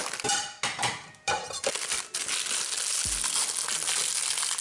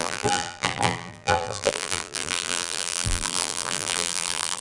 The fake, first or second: second